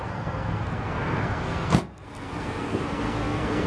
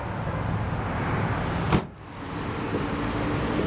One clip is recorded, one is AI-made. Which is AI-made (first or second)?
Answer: first